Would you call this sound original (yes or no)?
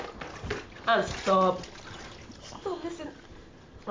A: yes